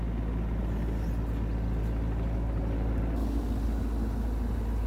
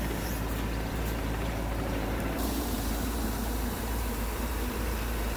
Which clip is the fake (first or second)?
second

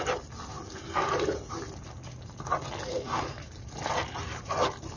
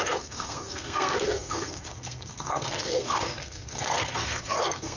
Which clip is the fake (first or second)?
second